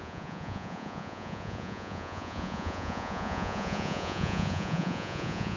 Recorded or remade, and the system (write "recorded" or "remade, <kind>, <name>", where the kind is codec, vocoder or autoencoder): remade, vocoder, Vocos